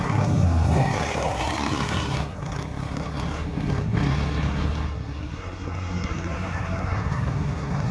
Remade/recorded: remade